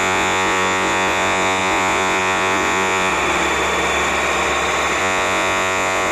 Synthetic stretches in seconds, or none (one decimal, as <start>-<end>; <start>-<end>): 0.0-3.1; 5.0-6.1